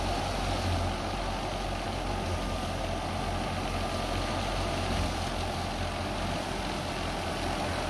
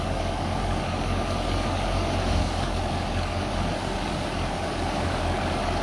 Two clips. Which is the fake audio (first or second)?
second